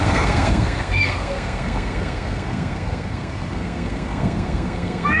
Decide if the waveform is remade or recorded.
remade